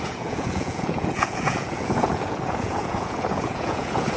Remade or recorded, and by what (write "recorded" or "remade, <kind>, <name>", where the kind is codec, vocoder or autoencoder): remade, vocoder, Vocos